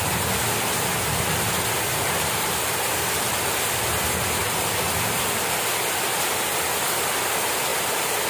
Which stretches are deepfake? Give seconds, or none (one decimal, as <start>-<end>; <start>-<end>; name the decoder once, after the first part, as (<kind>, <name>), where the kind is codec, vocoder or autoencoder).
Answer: 1.9-3.6 (vocoder, BigVGAN v2); 4.4-5.2; 7.7-8.3